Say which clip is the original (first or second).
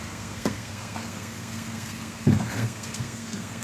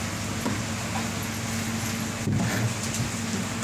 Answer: second